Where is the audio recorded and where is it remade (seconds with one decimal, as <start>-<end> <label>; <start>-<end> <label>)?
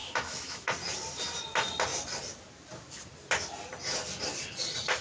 0.0-0.7 remade; 0.7-5.0 recorded